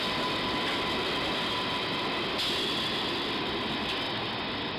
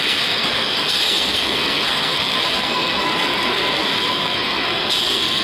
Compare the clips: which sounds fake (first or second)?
second